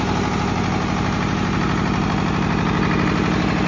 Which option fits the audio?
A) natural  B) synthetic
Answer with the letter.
A